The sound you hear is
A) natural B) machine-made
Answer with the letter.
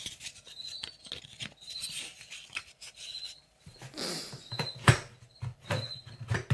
A